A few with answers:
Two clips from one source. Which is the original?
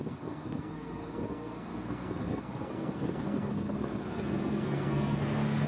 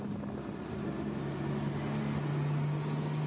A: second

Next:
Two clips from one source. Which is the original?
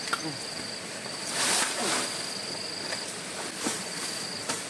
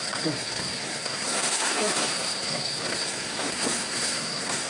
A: first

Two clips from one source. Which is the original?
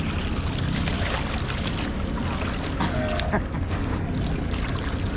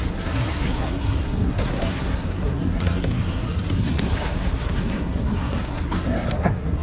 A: first